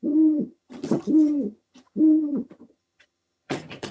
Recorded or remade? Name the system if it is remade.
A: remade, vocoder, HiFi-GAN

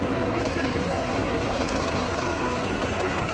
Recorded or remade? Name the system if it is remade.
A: remade, codec, SNAC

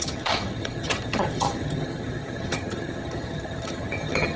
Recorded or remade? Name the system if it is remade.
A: remade, vocoder, HiFi-GAN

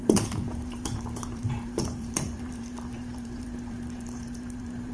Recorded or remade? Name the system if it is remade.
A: remade, vocoder, BigVGAN v2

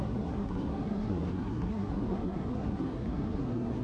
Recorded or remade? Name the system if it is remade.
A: remade, codec, SNAC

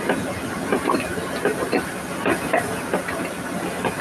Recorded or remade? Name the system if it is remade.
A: recorded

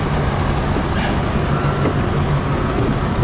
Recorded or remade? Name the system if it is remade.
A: recorded